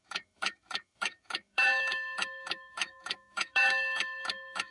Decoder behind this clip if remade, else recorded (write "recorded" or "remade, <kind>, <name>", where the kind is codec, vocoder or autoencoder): remade, autoencoder, DAC-VAE